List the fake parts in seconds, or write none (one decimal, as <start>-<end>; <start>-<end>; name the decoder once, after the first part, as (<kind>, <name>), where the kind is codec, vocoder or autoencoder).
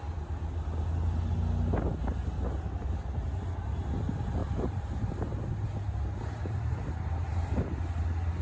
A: 4.4-5.5 (vocoder, BigVGAN v2)